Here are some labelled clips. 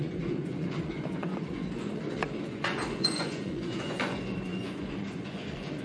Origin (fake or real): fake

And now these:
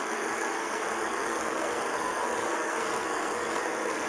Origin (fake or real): fake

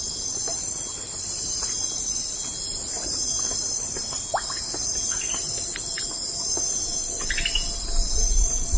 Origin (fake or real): real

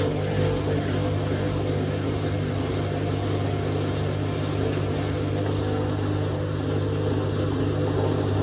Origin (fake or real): real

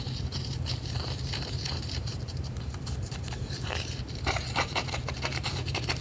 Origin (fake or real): fake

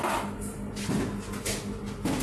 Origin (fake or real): real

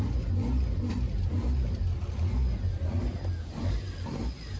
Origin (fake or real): real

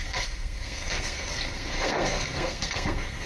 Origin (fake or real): fake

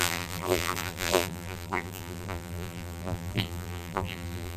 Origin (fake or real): fake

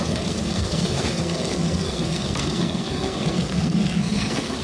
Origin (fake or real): fake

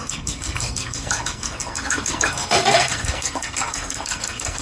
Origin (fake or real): fake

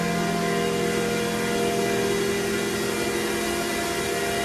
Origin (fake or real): real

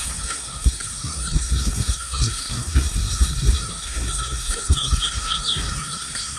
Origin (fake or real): fake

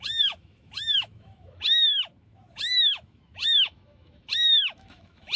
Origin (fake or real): fake